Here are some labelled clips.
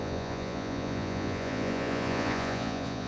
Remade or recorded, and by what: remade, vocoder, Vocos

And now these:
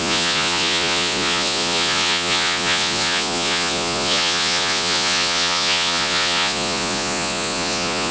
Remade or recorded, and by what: remade, vocoder, Vocos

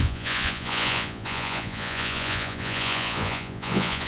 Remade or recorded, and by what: remade, vocoder, Vocos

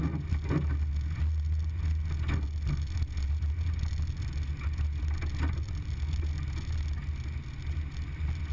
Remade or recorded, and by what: recorded